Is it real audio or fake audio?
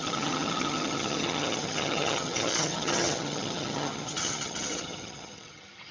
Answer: fake